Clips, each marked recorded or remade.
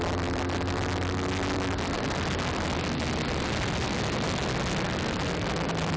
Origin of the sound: recorded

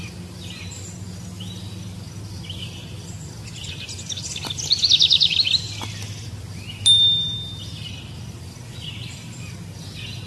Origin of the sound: recorded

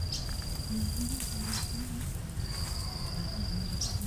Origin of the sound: recorded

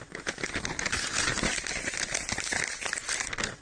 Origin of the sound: recorded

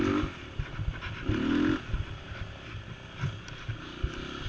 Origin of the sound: recorded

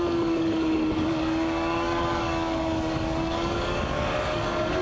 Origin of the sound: remade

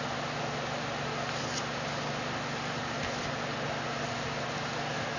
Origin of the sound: recorded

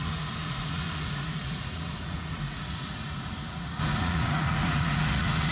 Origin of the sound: remade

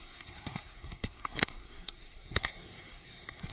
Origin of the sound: remade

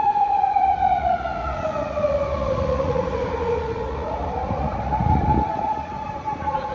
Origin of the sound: remade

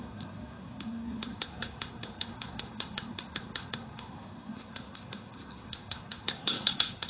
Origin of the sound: remade